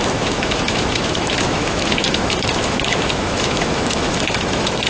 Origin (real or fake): fake